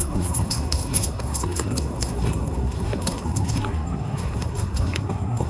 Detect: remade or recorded remade